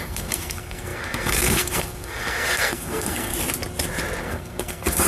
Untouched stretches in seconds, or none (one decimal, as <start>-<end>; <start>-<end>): 3.3-4.2